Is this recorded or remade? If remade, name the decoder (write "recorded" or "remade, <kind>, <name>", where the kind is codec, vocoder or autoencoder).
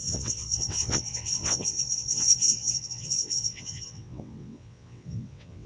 remade, vocoder, WaveNeXt